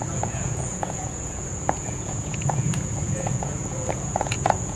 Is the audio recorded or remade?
remade